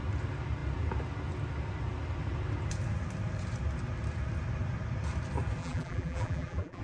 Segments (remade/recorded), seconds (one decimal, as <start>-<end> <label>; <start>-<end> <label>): 0.0-5.6 recorded; 5.6-6.8 remade